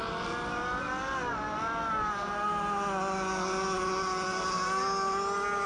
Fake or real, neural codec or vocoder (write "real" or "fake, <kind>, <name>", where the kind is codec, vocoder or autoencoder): real